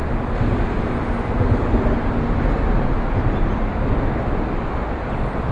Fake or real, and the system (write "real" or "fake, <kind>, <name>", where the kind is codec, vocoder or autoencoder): real